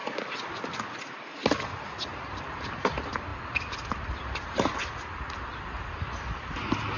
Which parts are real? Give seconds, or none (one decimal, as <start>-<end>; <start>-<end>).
0.0-7.0